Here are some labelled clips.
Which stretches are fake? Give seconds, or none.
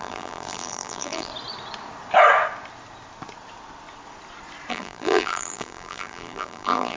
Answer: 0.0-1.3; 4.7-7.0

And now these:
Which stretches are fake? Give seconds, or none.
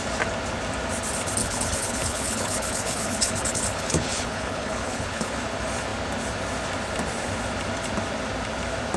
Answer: 1.4-5.3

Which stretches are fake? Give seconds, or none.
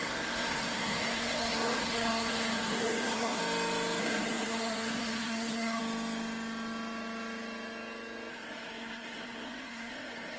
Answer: 0.0-3.4; 4.0-5.8; 8.3-10.4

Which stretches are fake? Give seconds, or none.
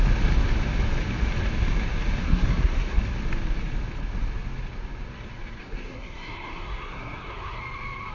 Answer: 2.2-3.0; 5.6-7.6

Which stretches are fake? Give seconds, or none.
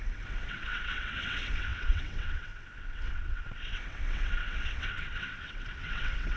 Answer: 0.0-6.4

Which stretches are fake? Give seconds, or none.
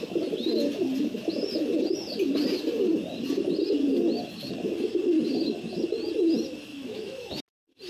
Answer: 6.7-7.4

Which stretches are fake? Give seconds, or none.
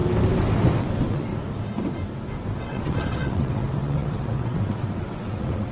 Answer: 0.8-1.3; 2.6-5.7